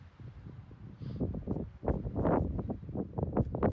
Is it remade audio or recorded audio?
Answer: recorded